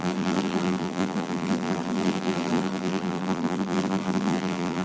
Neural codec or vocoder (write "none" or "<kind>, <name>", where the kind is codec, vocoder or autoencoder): vocoder, BigVGAN v2